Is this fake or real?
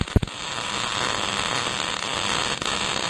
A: real